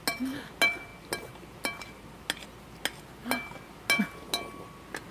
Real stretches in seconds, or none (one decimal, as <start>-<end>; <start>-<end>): 0.0-5.1